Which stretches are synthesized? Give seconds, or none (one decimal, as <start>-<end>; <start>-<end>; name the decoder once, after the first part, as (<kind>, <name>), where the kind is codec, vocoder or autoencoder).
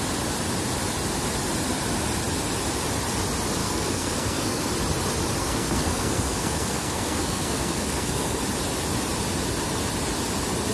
3.6-4.7 (codec, SNAC); 5.4-8.4